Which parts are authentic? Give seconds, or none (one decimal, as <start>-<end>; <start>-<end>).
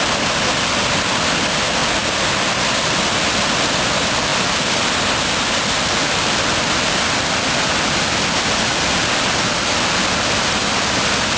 0.0-11.4